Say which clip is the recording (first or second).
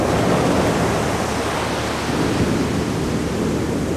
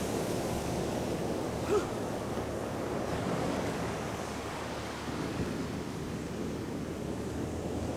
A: first